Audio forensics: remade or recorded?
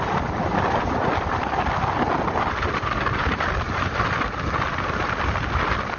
recorded